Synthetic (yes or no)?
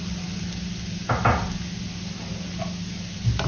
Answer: no